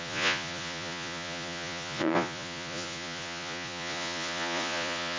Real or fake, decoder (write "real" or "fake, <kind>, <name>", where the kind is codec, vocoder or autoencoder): fake, vocoder, Vocos